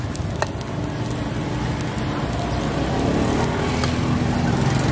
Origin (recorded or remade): recorded